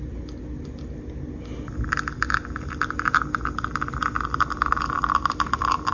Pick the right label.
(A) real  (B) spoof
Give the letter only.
A